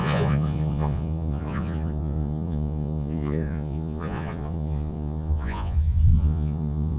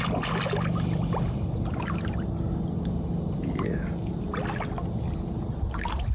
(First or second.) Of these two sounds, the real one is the second